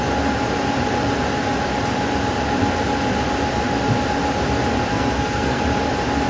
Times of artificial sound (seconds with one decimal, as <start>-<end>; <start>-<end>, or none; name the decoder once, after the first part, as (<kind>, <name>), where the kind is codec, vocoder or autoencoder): 4.9-5.6 (codec, SNAC)